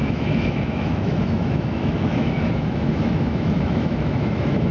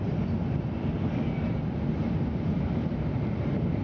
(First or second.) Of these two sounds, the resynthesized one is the first